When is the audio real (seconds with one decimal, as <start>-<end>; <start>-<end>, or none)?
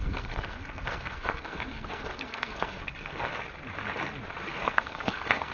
3.3-4.5